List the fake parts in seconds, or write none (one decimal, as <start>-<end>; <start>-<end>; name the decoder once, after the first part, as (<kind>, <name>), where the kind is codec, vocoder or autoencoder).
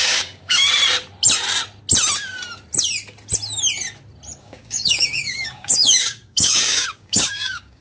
0.0-0.6 (codec, DAC); 4.4-7.8